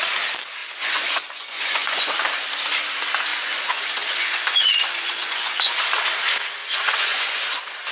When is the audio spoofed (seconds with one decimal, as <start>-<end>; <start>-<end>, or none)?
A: 0.6-2.2; 3.3-5.7; 6.6-7.4